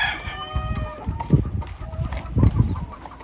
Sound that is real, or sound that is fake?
real